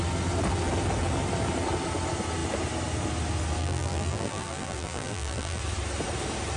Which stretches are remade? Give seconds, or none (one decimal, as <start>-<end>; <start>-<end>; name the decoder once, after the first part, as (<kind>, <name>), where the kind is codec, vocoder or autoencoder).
3.6-5.6 (vocoder, BigVGAN v2)